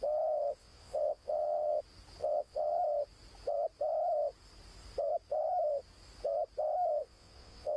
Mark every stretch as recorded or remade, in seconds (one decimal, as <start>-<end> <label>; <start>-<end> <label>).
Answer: 0.0-0.6 recorded; 0.6-1.8 remade; 1.8-2.2 recorded; 2.2-2.8 remade; 2.8-7.0 recorded; 7.0-7.8 remade